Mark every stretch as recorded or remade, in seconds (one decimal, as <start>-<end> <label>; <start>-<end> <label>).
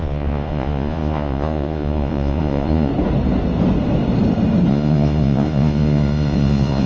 0.0-2.9 remade; 2.9-4.7 recorded; 4.7-6.9 remade